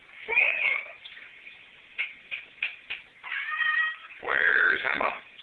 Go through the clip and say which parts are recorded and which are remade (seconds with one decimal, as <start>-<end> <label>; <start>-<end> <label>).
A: 0.0-0.5 recorded; 0.5-2.9 remade; 2.9-4.0 recorded; 4.0-5.4 remade